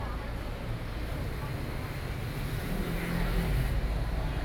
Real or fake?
real